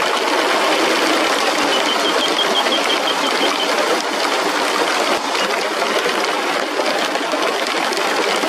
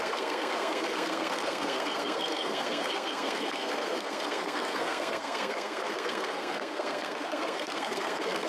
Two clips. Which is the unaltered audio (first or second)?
first